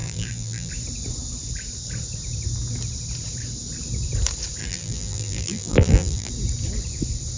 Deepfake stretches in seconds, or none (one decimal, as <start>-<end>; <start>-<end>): 0.0-0.7; 4.6-6.3